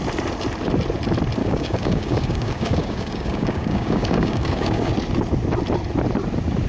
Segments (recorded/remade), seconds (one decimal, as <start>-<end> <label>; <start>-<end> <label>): 0.0-1.4 recorded; 1.4-4.9 remade; 4.9-6.7 recorded